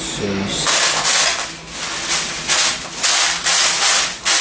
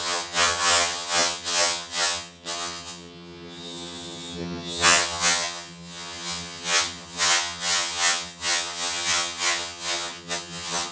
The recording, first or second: first